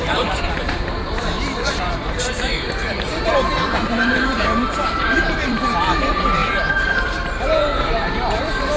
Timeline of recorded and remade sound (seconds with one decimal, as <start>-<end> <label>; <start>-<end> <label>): 0.0-8.8 remade